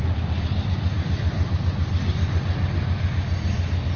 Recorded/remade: recorded